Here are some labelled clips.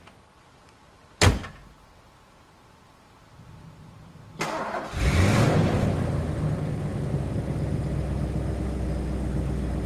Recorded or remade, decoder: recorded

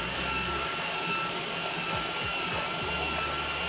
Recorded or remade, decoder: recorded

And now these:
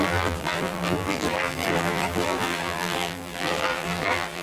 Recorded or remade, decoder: remade, vocoder, BigVGAN v2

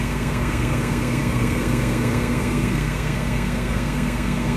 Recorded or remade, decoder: remade, codec, SNAC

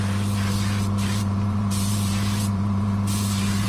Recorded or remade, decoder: remade, vocoder, BigVGAN v2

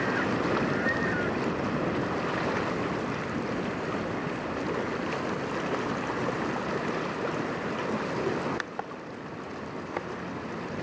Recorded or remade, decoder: recorded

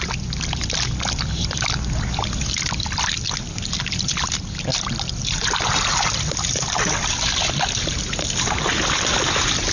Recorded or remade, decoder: recorded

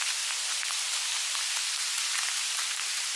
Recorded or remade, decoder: recorded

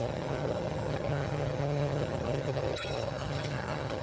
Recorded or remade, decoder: remade, vocoder, HiFi-GAN